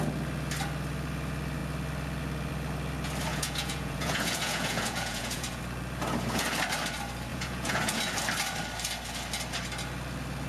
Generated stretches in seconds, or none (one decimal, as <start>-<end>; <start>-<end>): 3.3-5.6; 7.3-8.0